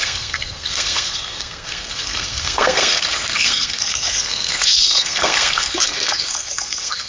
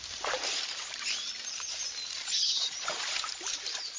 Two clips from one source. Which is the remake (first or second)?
first